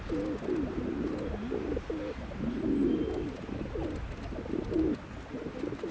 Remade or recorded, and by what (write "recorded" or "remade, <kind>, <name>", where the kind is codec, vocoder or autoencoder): recorded